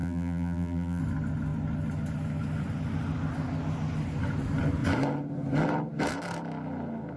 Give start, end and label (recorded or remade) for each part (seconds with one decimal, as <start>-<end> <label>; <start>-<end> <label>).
0.0-1.0 remade; 1.0-7.2 recorded